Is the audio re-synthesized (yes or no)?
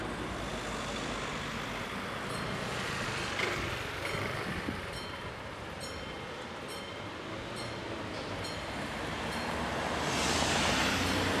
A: no